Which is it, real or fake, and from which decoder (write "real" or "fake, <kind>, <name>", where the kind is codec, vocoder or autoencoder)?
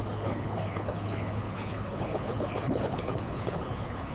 fake, codec, HILCodec